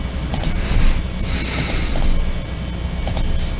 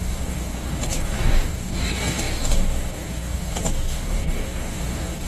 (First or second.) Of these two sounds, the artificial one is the second